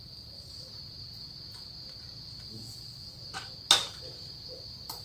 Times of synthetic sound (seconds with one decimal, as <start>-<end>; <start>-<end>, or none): 0.0-0.8; 3.8-5.0